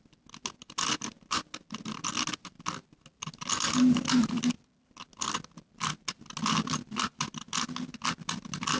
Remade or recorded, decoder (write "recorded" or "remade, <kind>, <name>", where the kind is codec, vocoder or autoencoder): recorded